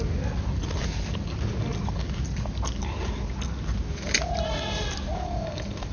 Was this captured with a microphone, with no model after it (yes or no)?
yes